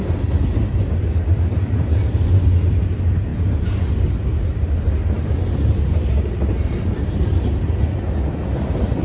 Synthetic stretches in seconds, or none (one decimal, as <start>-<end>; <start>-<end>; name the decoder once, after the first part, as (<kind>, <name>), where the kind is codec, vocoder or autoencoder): none